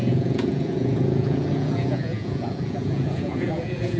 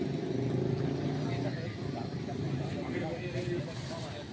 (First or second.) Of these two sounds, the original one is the second